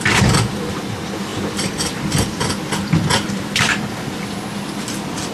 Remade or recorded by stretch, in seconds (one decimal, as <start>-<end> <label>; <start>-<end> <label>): 0.0-5.3 recorded